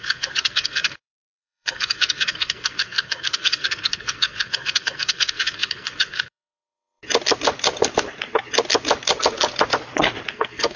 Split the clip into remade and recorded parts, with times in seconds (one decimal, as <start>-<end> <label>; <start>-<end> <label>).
0.0-7.0 remade; 7.0-10.3 recorded; 10.3-10.8 remade